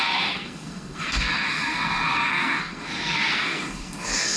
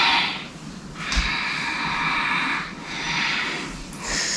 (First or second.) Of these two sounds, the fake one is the first